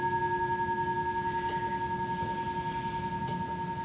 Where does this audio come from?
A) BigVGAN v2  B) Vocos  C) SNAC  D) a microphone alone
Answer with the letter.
D